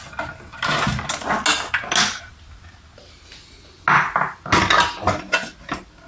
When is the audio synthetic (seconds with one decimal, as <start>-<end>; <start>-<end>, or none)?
none